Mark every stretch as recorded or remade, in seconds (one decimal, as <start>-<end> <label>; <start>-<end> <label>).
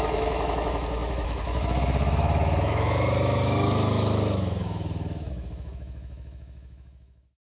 0.0-7.4 remade